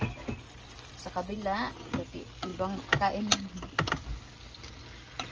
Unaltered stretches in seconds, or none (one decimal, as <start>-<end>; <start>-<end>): 0.0-5.3